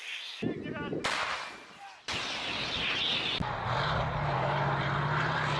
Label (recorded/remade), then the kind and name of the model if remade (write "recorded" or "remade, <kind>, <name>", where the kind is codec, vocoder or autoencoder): recorded